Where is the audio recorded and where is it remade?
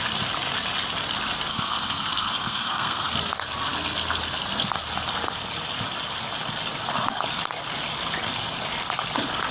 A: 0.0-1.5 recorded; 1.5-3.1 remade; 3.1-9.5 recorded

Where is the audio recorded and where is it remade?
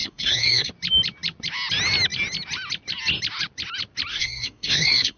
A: 0.0-0.7 remade; 0.7-4.1 recorded; 4.1-5.2 remade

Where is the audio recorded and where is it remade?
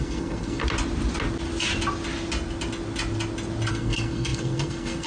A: 0.0-0.6 remade; 0.6-3.7 recorded; 3.7-5.1 remade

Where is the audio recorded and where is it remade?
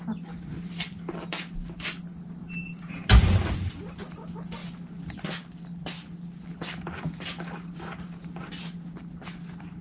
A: 0.0-9.8 recorded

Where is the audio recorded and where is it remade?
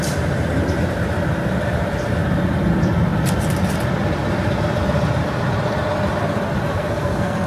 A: 0.0-6.7 recorded; 6.7-7.5 remade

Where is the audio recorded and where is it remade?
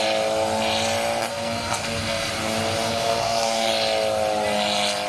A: 0.0-1.3 recorded; 1.3-2.3 remade; 2.3-2.9 recorded; 2.9-3.7 remade; 3.7-5.1 recorded